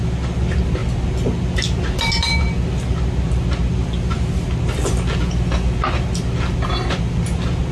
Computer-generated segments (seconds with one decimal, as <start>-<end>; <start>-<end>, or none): none

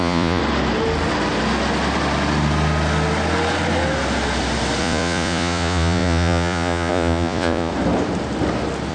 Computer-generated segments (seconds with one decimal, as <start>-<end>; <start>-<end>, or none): 0.0-0.4; 4.8-7.7